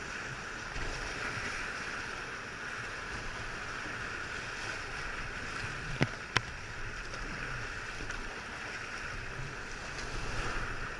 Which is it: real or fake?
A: real